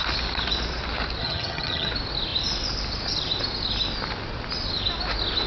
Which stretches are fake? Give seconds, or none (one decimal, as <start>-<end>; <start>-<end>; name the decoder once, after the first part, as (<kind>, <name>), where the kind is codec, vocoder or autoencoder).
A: 1.2-1.9 (vocoder, HiFi-GAN)